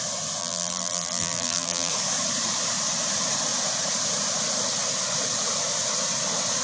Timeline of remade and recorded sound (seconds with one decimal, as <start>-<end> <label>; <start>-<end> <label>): 0.0-0.4 recorded; 0.4-1.9 remade; 1.9-6.6 recorded